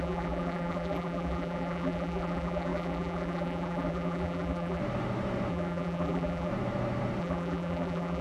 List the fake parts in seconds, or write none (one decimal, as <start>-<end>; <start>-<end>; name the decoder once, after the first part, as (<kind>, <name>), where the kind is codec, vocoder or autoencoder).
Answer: 0.0-4.8 (vocoder, BigVGAN v2); 5.5-6.5; 7.2-8.2